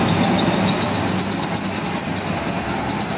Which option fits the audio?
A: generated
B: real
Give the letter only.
B